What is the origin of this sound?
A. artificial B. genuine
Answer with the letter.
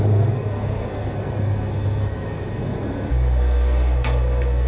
A